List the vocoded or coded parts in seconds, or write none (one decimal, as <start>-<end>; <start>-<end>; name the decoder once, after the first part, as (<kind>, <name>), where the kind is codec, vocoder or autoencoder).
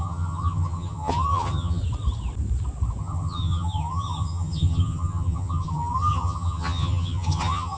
0.0-1.8 (vocoder, HiFi-GAN); 3.0-7.8